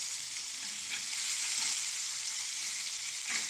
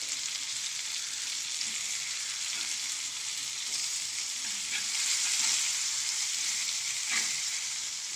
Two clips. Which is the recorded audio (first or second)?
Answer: first